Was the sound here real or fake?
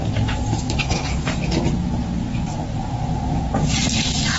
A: real